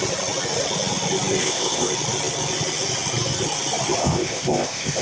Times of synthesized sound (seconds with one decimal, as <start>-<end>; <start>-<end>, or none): 1.4-1.9; 4.0-5.0